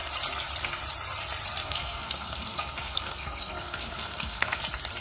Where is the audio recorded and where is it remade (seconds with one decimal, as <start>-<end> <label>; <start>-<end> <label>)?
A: 0.0-1.6 recorded; 1.6-4.6 remade; 4.6-5.0 recorded